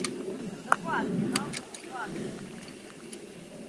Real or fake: real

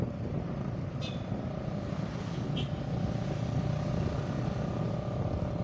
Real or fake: real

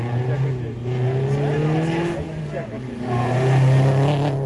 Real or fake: real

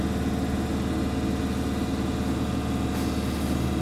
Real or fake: real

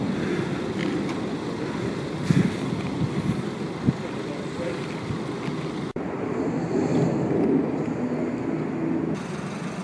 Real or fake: real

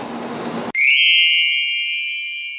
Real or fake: real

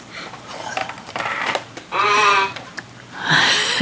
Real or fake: fake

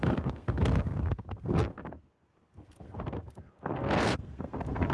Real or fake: fake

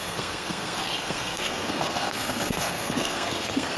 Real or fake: fake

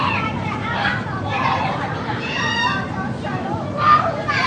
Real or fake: fake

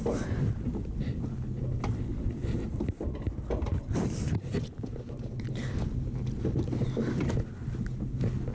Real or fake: real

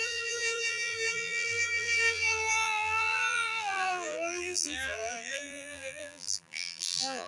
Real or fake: fake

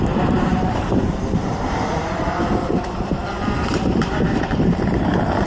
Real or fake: fake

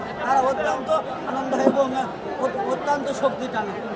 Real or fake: real